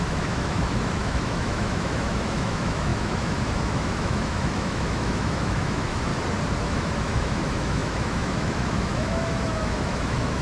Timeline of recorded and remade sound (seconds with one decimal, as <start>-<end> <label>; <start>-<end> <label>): 0.0-6.1 remade; 6.1-6.6 recorded; 6.6-10.4 remade

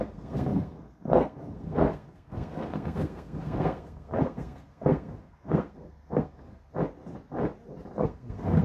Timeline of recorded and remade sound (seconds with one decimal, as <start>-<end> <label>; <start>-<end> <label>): 0.0-6.7 remade; 6.7-8.0 recorded; 8.0-8.6 remade

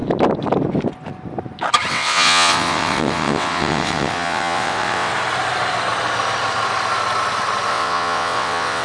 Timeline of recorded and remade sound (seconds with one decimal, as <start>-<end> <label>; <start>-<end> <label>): 0.0-1.9 recorded; 1.9-5.1 remade; 5.1-7.7 recorded; 7.7-8.8 remade

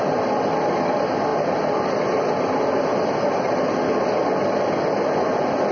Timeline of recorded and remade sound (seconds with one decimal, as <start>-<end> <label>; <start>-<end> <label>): 0.0-5.7 recorded

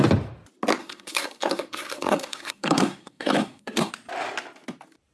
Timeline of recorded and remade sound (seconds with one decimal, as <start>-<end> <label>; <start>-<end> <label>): 0.0-0.8 recorded; 0.8-3.9 remade; 3.9-5.1 recorded

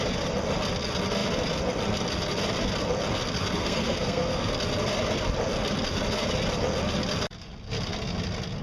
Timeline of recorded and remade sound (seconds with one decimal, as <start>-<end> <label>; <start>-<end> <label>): 0.0-3.6 recorded; 3.6-4.5 remade; 4.5-8.6 recorded

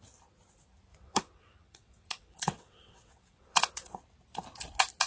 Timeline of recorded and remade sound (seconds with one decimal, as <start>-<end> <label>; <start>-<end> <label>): 0.0-0.9 recorded; 0.9-4.0 remade; 4.0-5.1 recorded